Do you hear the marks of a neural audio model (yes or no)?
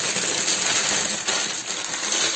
no